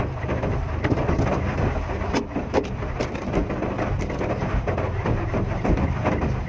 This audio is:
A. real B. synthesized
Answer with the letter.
B